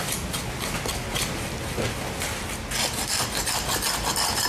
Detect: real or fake real